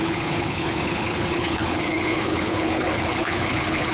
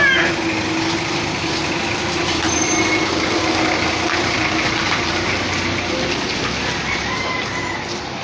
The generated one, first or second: first